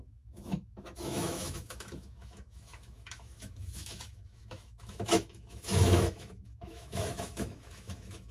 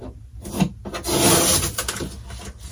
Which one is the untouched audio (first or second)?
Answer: second